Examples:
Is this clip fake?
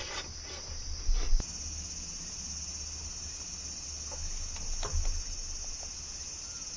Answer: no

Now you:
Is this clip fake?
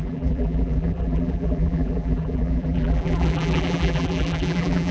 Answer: yes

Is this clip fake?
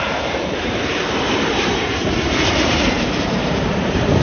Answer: yes